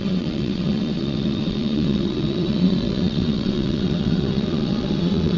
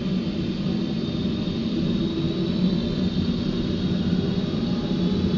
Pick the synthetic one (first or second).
first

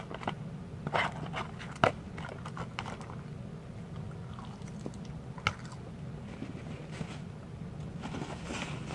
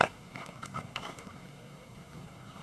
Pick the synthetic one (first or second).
second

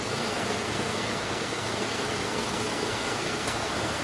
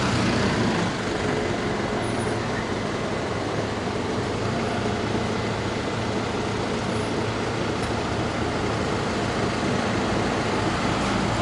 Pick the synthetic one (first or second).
first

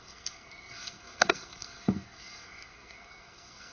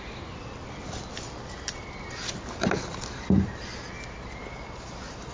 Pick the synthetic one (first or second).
first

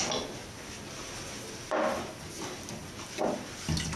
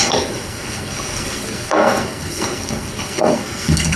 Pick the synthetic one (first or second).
second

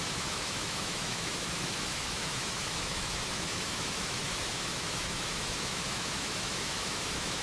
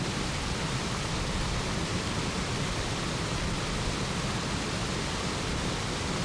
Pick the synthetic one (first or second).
first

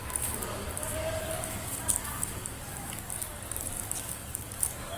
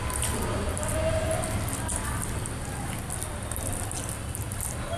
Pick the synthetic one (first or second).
first